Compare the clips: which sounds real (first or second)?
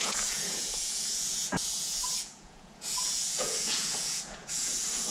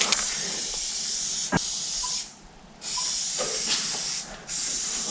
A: second